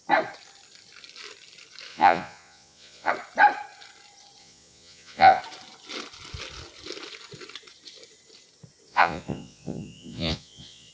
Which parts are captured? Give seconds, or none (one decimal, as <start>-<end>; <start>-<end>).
0.0-1.9; 3.1-4.4; 5.4-8.9